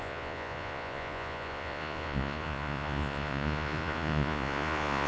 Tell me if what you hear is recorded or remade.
remade